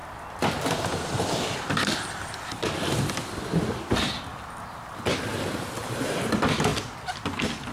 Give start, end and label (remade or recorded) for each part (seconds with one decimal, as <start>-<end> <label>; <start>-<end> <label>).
0.0-3.5 remade; 3.5-5.3 recorded; 5.3-6.2 remade; 6.2-7.7 recorded